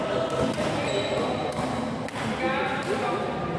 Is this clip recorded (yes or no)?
yes